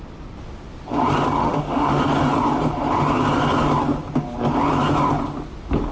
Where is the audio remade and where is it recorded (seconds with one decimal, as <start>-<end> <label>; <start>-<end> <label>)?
0.0-1.4 recorded; 1.4-2.0 remade; 2.0-5.9 recorded